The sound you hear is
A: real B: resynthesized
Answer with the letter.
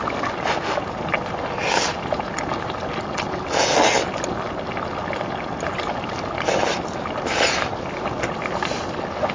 A